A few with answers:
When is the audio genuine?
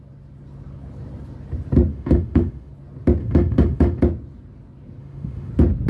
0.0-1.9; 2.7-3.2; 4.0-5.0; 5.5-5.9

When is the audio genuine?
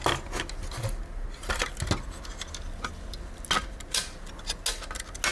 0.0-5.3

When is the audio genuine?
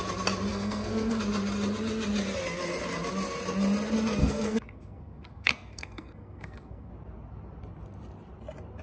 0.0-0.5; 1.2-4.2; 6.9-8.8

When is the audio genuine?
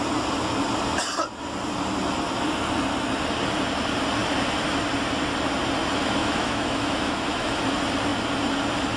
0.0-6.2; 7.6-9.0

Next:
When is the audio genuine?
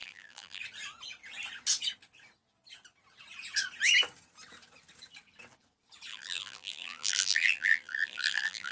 0.6-6.1